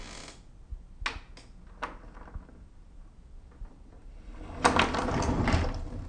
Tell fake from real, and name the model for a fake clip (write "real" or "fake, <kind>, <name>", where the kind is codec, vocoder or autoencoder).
real